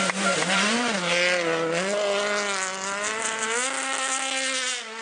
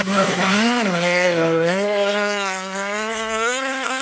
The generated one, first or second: second